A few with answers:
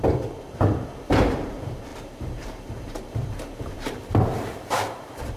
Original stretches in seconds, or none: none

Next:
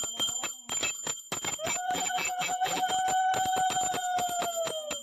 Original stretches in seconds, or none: 0.0-1.9; 2.9-5.0